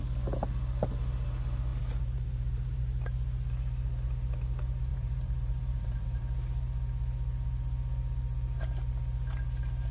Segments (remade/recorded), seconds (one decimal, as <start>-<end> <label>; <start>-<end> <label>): 0.0-1.7 recorded; 1.7-2.8 remade; 2.8-4.9 recorded; 4.9-6.2 remade; 6.2-9.9 recorded